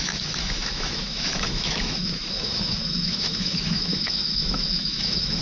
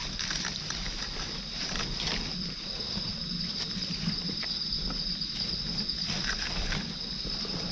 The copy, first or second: first